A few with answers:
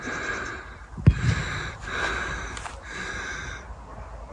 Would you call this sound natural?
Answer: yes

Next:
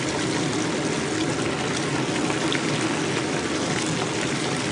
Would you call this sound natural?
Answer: yes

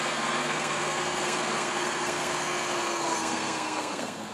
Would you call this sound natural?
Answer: no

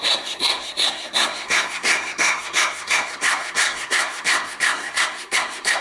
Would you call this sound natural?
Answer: no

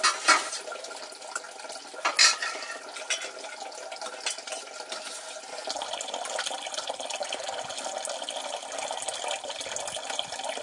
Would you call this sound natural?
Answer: yes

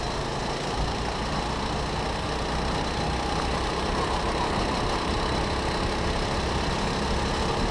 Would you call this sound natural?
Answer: yes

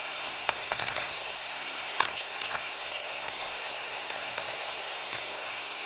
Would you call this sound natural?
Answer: no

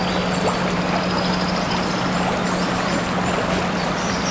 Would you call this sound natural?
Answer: yes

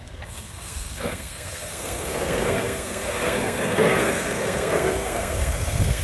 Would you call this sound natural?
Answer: no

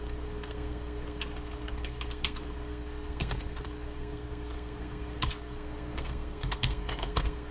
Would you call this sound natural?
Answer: no